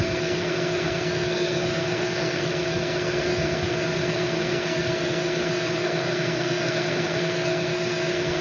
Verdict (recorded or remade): remade